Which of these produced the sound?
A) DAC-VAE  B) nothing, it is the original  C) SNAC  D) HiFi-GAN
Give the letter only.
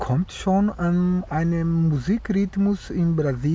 B